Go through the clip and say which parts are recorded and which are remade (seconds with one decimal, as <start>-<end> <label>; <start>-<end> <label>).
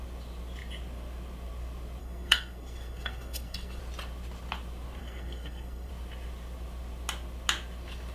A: 0.0-2.0 recorded; 2.0-3.8 remade; 3.8-5.0 recorded; 5.0-5.9 remade; 5.9-8.1 recorded